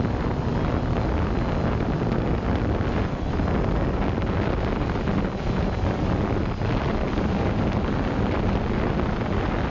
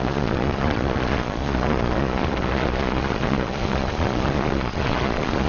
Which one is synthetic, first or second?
second